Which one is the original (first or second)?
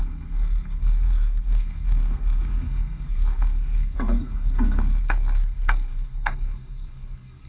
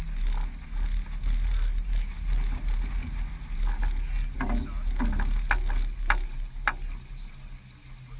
second